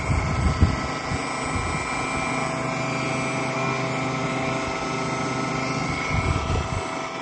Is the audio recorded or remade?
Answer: recorded